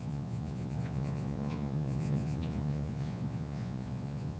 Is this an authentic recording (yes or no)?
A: no